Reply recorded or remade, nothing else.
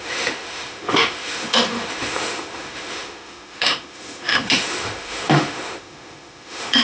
remade